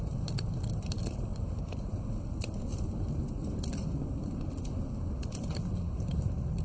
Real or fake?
real